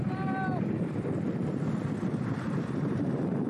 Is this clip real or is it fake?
real